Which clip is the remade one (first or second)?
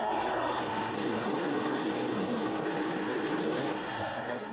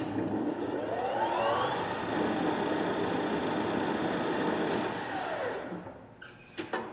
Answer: first